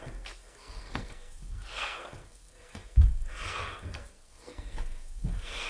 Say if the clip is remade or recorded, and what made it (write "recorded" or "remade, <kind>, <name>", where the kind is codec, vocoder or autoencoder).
remade, codec, SNAC